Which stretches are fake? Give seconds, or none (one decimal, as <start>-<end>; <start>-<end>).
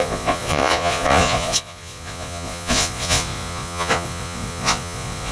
0.0-5.3